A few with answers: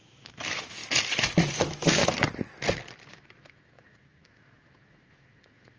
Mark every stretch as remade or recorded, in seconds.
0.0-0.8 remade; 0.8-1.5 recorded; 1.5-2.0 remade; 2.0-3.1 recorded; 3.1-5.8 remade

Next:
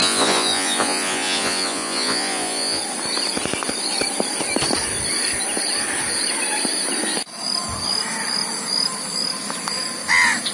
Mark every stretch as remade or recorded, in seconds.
0.0-2.8 remade; 2.8-10.5 recorded